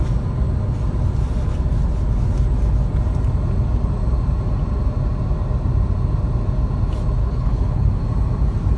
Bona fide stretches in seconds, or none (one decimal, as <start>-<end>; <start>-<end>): 0.0-7.2; 8.0-8.8